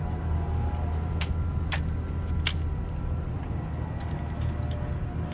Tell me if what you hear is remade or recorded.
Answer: recorded